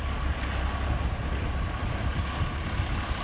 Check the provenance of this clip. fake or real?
real